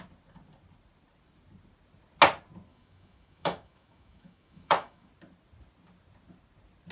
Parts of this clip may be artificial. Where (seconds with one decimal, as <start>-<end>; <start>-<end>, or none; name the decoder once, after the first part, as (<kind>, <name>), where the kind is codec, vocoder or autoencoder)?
2.7-5.1 (autoencoder, DAC-VAE)